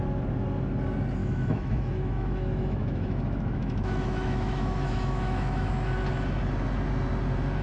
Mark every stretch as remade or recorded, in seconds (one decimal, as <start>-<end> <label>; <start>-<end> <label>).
0.0-1.2 recorded; 1.2-5.7 remade; 5.7-7.6 recorded